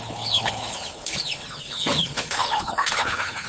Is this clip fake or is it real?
fake